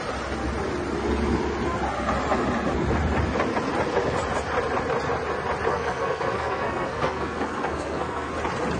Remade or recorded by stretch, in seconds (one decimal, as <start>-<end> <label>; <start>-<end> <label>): 0.0-5.7 recorded; 5.7-8.3 remade; 8.3-8.8 recorded